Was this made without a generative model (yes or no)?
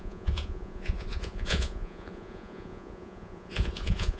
no